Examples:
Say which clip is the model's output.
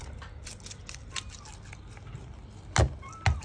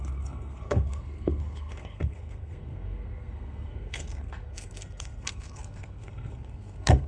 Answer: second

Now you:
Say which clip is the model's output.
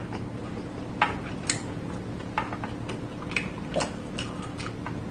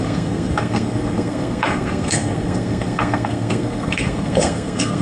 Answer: second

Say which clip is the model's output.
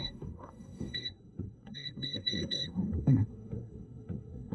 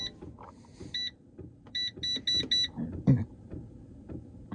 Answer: first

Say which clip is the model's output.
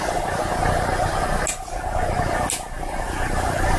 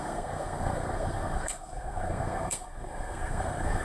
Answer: second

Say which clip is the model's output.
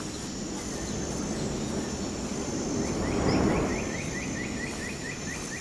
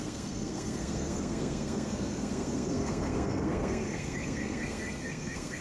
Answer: second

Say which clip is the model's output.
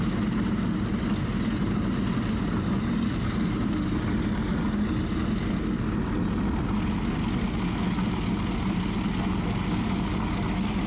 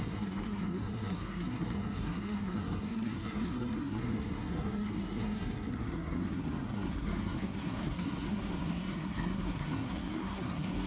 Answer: second